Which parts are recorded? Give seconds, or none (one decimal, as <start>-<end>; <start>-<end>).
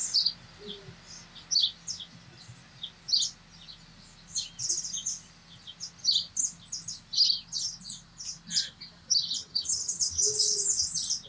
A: 0.0-9.4; 10.1-11.3